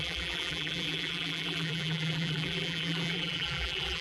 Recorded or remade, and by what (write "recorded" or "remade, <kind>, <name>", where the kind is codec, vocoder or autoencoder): remade, vocoder, BigVGAN v2